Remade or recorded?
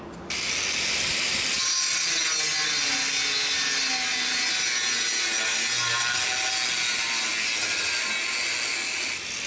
recorded